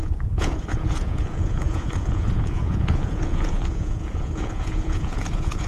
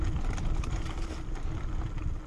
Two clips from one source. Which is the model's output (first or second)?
first